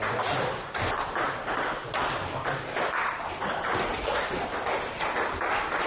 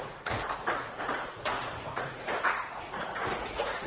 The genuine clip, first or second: first